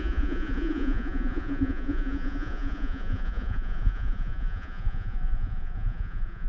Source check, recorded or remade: remade